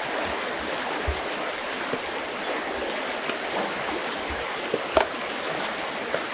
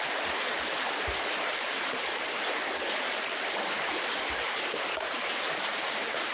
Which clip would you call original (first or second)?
first